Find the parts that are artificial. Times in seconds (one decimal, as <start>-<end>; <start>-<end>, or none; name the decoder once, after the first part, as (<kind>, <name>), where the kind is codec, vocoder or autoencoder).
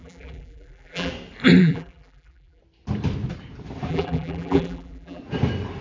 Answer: 0.0-1.1 (vocoder, BigVGAN v2); 1.6-2.6; 3.9-5.2